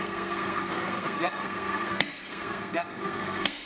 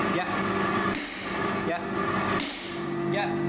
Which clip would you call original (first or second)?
second